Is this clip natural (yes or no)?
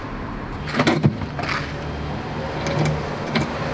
yes